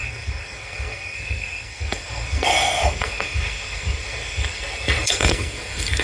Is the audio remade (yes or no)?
yes